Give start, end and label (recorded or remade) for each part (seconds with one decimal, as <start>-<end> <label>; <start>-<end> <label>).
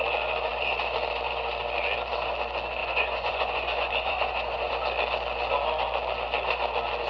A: 0.0-2.8 recorded; 2.8-4.7 remade; 4.7-7.1 recorded